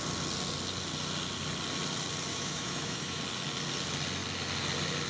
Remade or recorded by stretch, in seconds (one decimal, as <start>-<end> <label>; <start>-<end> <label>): 0.0-2.3 recorded; 2.3-3.2 remade; 3.2-5.1 recorded